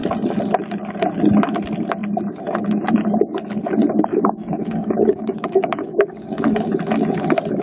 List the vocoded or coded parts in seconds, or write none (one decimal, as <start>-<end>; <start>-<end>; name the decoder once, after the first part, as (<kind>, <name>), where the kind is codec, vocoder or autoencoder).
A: 4.1-6.8 (codec, DAC)